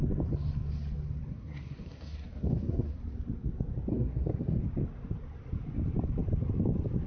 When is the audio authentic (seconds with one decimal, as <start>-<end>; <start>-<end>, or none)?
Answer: 0.0-1.3; 3.0-3.9; 4.6-7.1

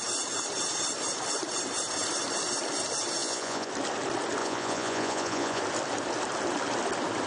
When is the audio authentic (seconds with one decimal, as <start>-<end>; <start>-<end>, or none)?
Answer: 0.0-3.2; 3.7-4.4; 5.6-7.3

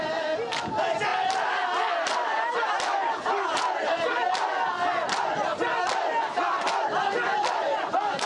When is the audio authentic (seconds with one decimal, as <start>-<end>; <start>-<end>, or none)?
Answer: 0.0-8.3

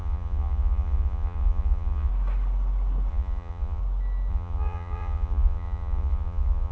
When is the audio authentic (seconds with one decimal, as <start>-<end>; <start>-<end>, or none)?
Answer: 2.1-3.1; 3.8-4.3